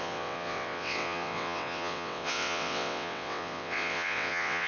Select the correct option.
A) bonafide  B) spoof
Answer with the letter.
B